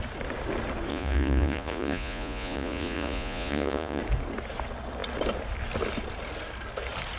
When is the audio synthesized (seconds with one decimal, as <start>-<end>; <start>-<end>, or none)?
0.9-4.0